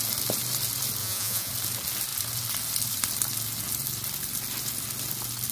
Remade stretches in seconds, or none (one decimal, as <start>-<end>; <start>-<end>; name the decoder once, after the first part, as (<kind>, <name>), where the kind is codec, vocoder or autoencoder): 1.0-1.5 (vocoder, Vocos)